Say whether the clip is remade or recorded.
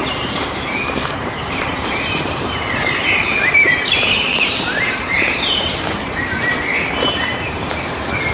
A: remade